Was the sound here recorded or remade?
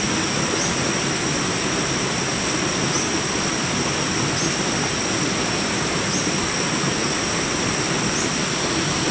recorded